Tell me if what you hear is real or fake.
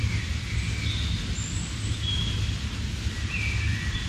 real